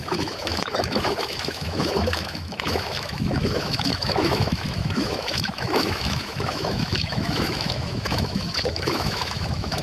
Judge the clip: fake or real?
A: fake